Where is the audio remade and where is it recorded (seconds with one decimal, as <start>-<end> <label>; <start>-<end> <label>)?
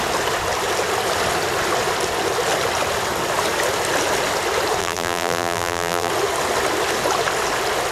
0.0-4.8 recorded; 4.8-6.1 remade; 6.1-7.9 recorded